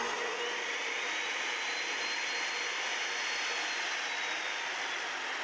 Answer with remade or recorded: recorded